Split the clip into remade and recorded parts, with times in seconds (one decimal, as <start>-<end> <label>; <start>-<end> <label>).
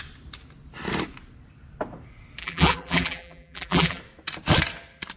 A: 0.0-2.4 recorded; 2.4-4.0 remade; 4.0-5.2 recorded